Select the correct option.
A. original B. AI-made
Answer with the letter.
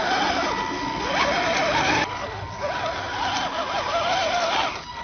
A